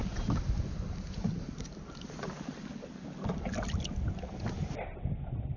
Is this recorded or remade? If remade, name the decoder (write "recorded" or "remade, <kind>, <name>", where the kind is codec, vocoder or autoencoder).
recorded